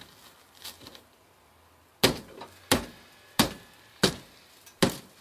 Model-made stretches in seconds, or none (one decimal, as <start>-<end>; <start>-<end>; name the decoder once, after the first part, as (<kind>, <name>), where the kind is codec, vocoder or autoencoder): none